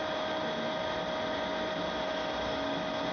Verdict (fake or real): real